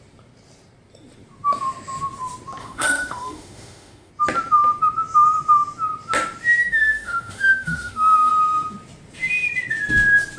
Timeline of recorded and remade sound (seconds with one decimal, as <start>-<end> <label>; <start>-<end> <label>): 0.0-2.6 recorded; 2.6-4.1 remade; 4.1-6.6 recorded; 6.6-8.3 remade; 8.3-10.4 recorded